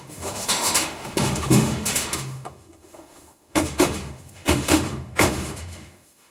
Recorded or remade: remade